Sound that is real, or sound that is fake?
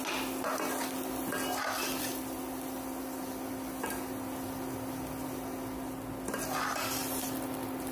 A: real